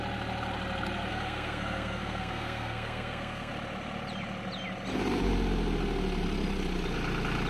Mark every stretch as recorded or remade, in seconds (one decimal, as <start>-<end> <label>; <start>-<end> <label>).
0.0-1.1 recorded; 1.1-3.5 remade; 3.5-7.5 recorded